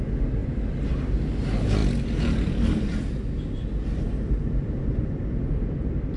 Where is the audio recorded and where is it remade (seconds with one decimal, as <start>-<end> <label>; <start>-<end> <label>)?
0.0-6.2 recorded

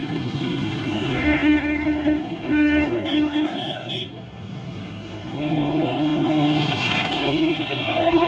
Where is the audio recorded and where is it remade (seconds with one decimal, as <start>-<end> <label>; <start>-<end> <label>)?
0.0-8.3 remade

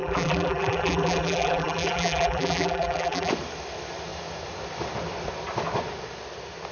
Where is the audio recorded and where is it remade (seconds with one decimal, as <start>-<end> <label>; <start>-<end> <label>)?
0.0-3.3 remade; 3.3-6.7 recorded

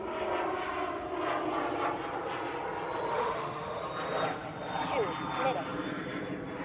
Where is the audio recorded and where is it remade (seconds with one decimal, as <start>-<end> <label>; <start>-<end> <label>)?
0.0-3.1 recorded; 3.1-3.8 remade; 3.8-6.6 recorded

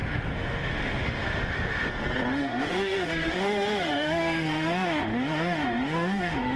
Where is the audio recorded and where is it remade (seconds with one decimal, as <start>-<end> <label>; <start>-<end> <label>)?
0.0-1.9 remade; 1.9-2.3 recorded; 2.3-6.6 remade